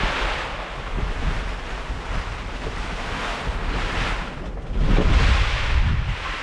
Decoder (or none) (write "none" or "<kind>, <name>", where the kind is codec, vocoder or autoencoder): none